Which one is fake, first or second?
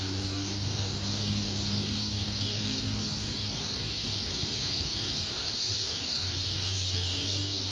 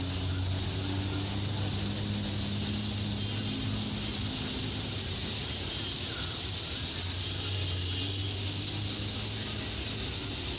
first